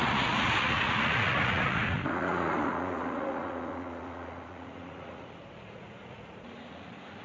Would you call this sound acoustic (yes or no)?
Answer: no